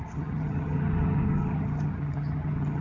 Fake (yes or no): yes